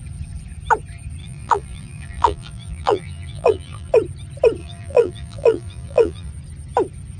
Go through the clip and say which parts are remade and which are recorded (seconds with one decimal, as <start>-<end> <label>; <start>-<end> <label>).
0.0-1.2 recorded; 1.2-3.9 remade; 3.9-4.6 recorded; 4.6-6.3 remade; 6.3-7.2 recorded